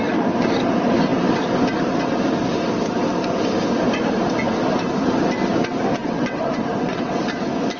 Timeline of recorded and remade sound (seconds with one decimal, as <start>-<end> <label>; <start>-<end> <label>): 0.0-6.0 recorded; 6.0-7.2 remade; 7.2-7.8 recorded